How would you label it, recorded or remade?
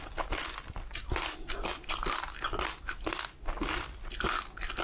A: recorded